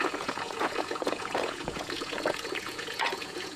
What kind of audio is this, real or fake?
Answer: fake